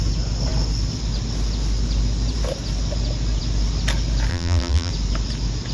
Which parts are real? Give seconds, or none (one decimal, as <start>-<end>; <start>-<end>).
0.0-4.3; 4.9-5.7